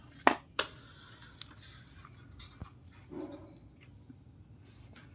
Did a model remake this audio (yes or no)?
no